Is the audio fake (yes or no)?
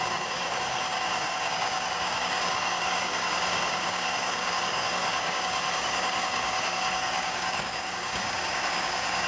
yes